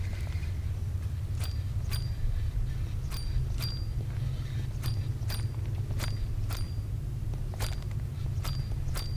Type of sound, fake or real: real